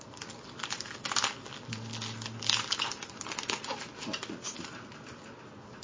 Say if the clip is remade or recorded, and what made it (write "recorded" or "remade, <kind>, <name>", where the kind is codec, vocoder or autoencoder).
recorded